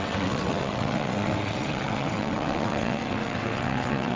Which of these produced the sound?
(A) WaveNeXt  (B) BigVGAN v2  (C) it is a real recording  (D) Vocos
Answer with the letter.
A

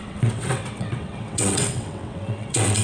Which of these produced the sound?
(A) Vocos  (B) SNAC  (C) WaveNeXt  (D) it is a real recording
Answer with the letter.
C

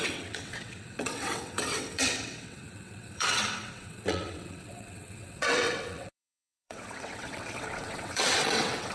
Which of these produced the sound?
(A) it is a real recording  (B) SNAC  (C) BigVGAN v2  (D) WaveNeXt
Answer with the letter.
D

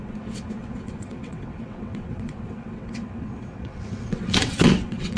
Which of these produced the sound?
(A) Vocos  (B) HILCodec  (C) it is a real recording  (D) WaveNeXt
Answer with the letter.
D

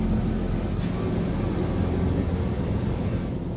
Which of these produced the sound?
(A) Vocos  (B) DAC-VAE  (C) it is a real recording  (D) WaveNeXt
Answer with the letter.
C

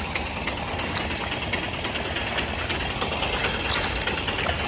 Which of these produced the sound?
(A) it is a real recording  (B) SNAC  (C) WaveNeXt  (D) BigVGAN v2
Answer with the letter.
A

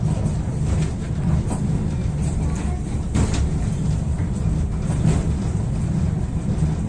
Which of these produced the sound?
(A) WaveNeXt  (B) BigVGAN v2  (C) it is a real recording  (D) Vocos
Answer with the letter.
C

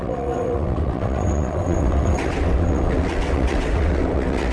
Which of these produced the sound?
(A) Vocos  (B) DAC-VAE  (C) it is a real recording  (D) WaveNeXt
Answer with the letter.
D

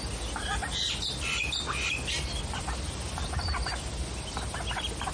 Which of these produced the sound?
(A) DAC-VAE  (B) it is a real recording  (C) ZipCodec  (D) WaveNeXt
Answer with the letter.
B